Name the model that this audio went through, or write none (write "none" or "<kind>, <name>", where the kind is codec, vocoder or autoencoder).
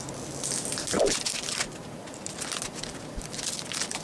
none